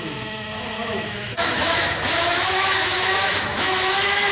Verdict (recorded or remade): remade